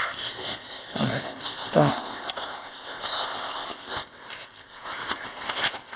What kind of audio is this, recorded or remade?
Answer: remade